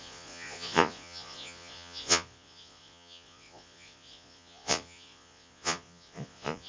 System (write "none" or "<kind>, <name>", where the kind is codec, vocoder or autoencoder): vocoder, Vocos